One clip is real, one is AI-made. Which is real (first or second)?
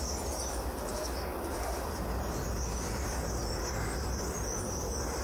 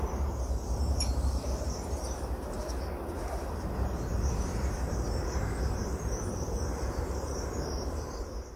first